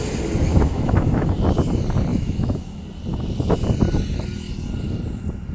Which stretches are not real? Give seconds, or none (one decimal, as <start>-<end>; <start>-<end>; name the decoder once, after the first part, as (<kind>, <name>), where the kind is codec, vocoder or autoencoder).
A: 0.5-1.3 (autoencoder, DAC-VAE); 2.1-2.8